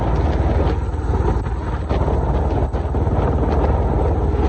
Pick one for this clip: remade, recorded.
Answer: recorded